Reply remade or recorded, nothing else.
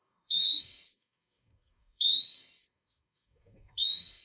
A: remade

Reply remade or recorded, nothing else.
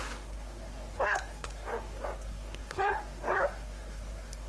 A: remade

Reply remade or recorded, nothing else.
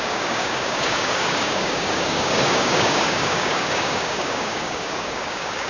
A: remade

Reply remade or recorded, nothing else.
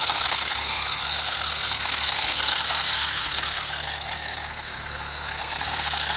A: remade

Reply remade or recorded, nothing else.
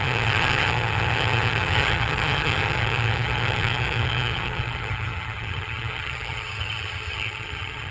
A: remade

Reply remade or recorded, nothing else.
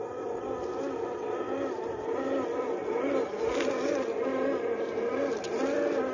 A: recorded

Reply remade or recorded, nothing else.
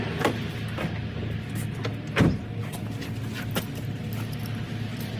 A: recorded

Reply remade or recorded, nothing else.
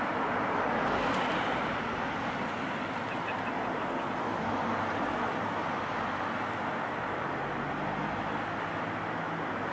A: recorded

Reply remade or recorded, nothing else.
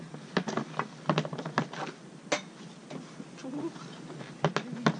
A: recorded